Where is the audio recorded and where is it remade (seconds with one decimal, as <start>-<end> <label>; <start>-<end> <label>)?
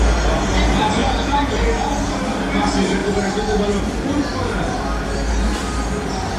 0.0-1.0 recorded; 1.0-1.5 remade; 1.5-6.4 recorded